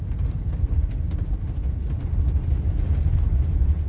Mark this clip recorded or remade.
recorded